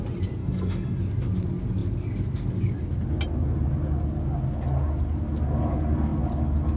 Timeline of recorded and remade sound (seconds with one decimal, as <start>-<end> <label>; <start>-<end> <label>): 0.0-0.4 recorded; 0.4-1.0 remade; 1.0-6.8 recorded